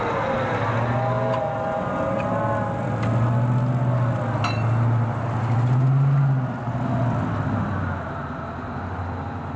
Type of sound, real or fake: real